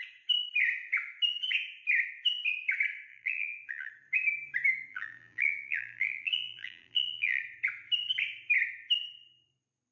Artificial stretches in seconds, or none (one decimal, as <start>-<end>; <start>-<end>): 3.1-3.9; 4.9-7.4